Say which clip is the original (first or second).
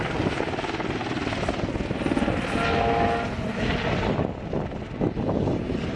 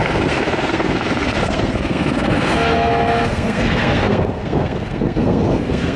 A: first